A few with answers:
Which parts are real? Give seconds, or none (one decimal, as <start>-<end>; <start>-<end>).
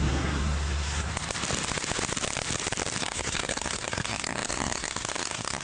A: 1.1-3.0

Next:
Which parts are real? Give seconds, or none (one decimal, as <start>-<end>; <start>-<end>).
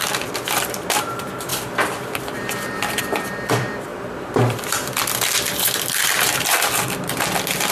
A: none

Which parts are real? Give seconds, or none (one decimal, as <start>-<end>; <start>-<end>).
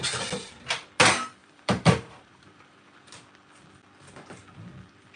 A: 0.0-1.4; 3.1-5.2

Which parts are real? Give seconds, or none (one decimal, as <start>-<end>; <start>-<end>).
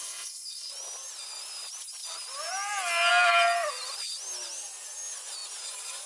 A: 0.7-6.1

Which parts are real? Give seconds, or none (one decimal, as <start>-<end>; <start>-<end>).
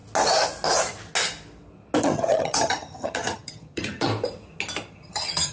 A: 0.0-2.0; 4.1-4.9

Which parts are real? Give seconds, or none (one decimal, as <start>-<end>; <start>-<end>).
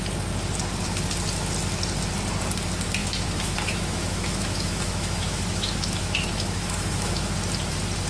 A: 0.0-3.0; 7.3-8.1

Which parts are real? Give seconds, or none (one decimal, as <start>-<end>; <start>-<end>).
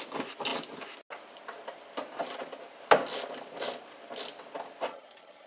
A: 0.0-4.9